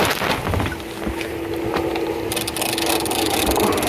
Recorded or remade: remade